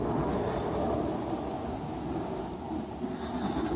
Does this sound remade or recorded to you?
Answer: recorded